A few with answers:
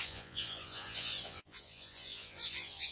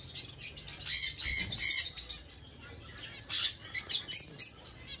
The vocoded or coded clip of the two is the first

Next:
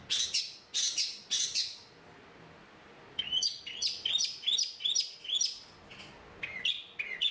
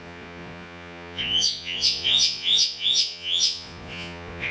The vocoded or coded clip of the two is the second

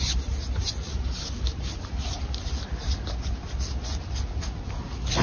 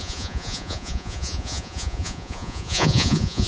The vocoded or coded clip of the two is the second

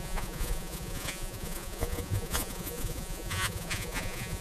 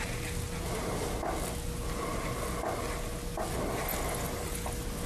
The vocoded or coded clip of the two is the first